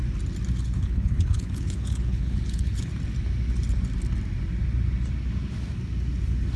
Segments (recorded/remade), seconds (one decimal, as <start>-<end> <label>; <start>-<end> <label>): 0.0-0.6 recorded; 0.6-2.9 remade; 2.9-6.6 recorded